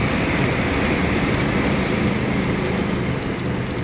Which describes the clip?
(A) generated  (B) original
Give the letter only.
B